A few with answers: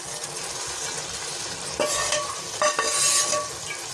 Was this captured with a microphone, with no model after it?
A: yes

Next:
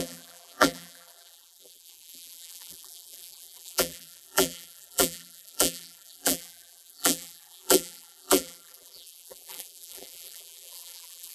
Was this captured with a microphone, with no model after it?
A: no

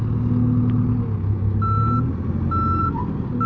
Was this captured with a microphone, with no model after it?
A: yes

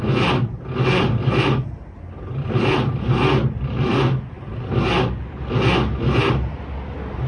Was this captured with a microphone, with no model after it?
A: yes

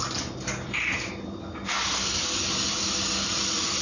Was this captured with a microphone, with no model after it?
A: yes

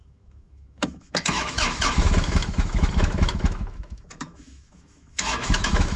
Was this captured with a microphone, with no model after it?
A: no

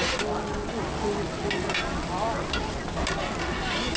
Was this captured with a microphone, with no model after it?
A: yes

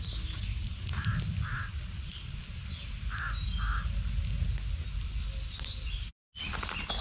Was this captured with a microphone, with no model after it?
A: yes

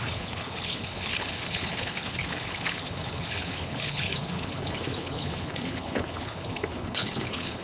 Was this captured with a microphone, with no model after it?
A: no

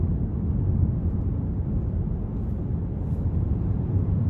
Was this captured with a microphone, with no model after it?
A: yes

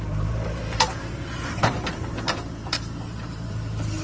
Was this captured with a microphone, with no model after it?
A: no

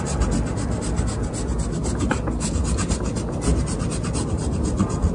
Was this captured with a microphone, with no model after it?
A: yes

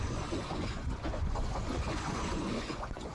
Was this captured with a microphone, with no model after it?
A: no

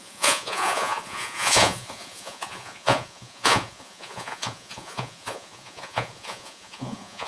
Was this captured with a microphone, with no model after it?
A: no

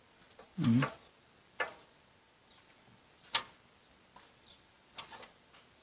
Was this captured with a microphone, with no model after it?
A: yes